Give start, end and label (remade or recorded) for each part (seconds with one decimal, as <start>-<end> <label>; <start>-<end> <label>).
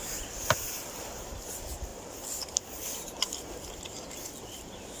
0.0-5.0 recorded